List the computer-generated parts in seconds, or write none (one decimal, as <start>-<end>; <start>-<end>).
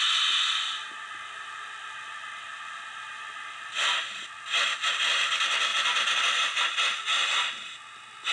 none